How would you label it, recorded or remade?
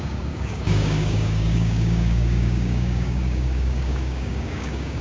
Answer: remade